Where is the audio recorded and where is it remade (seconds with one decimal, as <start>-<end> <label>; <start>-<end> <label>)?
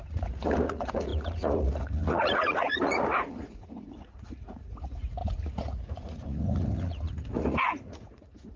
0.0-8.6 remade